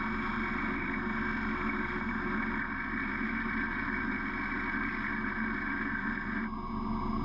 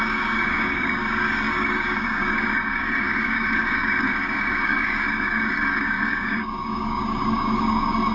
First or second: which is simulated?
second